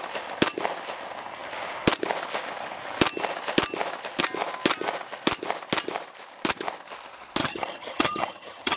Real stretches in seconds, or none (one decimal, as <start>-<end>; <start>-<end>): 0.0-7.4